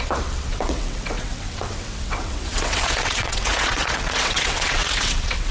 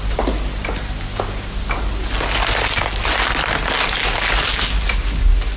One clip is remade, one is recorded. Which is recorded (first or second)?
second